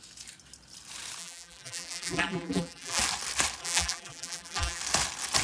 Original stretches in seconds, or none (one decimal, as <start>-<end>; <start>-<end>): 0.0-1.2; 3.0-3.6; 4.8-5.4

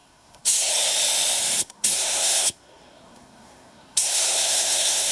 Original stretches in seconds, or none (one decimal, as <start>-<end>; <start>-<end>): 0.7-1.6

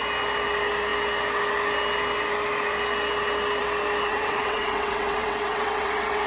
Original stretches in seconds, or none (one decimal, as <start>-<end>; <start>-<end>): 0.0-4.1

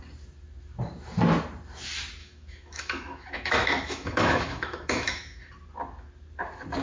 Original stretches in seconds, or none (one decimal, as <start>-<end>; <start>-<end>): 0.0-2.2; 5.5-6.8

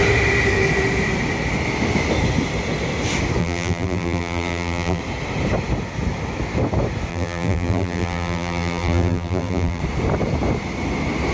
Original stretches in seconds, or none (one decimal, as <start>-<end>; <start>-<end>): 0.0-3.4; 5.0-7.1; 9.8-11.3

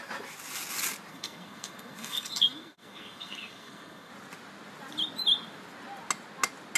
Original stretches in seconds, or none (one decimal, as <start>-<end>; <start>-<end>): 0.0-1.1; 4.1-6.8

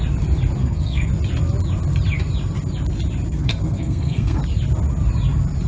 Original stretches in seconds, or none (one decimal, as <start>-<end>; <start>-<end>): 0.0-0.6; 1.1-3.3; 4.4-5.7

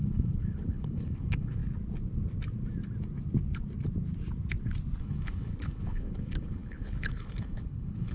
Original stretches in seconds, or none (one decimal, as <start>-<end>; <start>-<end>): 1.6-5.0